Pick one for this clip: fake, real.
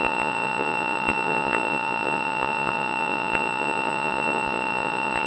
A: fake